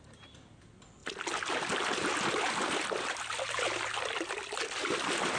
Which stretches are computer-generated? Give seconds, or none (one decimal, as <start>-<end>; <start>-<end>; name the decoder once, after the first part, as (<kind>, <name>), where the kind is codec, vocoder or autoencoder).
none